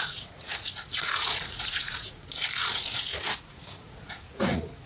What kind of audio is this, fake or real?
fake